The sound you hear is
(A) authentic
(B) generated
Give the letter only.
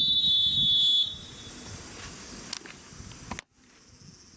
A